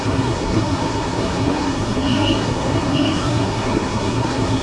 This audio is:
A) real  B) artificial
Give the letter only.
B